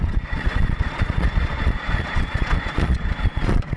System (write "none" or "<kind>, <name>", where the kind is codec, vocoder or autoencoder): vocoder, Vocos